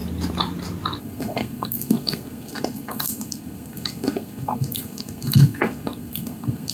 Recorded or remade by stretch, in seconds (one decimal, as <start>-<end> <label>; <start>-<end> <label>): 0.0-1.0 recorded; 1.0-6.7 remade